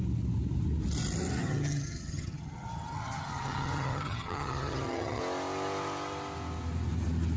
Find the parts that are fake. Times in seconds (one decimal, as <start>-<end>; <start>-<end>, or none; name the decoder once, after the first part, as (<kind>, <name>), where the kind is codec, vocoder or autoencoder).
1.4-5.2 (vocoder, HiFi-GAN)